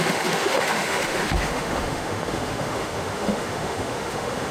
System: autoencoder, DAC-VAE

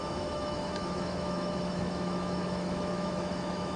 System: autoencoder, DAC-VAE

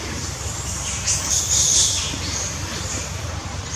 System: vocoder, BigVGAN v2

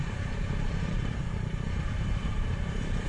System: vocoder, BigVGAN v2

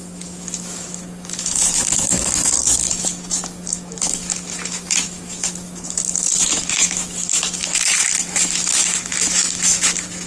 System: autoencoder, DAC-VAE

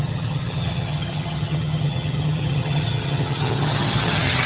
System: vocoder, HiFi-GAN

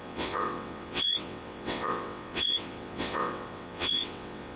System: vocoder, WaveNeXt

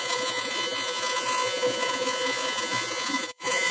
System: vocoder, Vocos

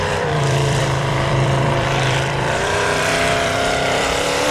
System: vocoder, BigVGAN v2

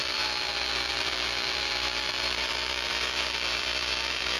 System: vocoder, BigVGAN v2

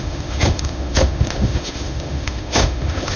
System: autoencoder, DAC-VAE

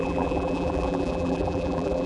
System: vocoder, BigVGAN v2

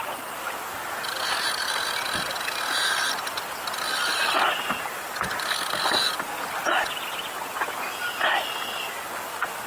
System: none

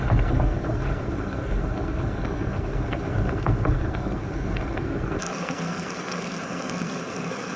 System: codec, SNAC